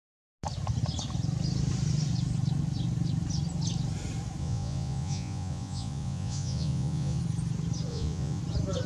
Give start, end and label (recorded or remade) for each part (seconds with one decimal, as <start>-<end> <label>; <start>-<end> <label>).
0.0-4.4 recorded; 4.4-7.2 remade; 7.2-7.9 recorded; 7.9-8.4 remade; 8.4-8.9 recorded

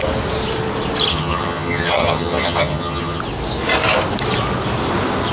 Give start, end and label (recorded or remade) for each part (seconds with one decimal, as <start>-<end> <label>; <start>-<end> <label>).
0.0-1.1 recorded; 1.1-3.2 remade; 3.2-5.3 recorded